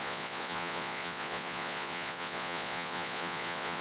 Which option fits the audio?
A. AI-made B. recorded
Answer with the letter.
A